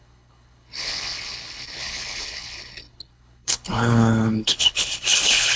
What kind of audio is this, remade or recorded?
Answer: remade